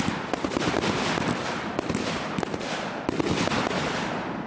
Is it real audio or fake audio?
real